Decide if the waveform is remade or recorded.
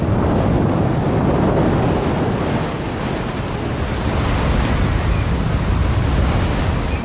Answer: recorded